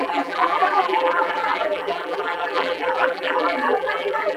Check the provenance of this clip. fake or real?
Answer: fake